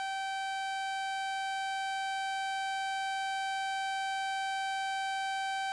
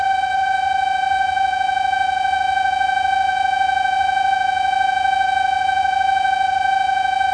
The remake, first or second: second